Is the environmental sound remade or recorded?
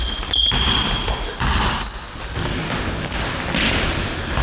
recorded